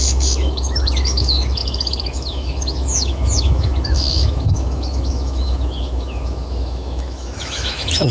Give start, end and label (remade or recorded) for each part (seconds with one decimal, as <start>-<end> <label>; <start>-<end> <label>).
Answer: 0.0-8.1 remade